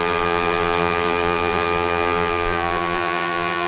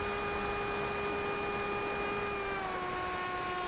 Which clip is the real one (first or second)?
second